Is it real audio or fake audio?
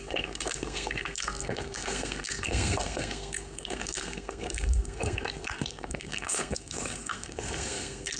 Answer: fake